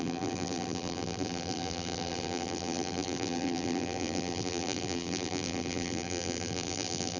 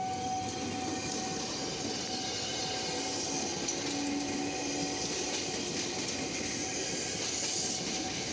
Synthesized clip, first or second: first